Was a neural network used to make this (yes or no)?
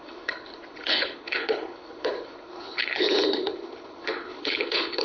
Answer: yes